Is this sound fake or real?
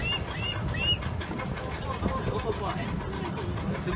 real